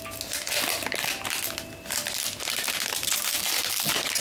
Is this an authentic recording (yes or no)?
yes